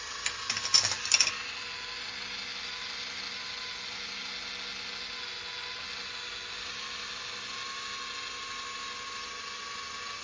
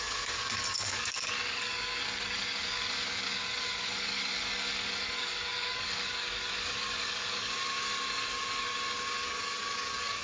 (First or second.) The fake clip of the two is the second